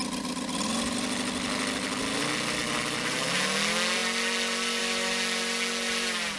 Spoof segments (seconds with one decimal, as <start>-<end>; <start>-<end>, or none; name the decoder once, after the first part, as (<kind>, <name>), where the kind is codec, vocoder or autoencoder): none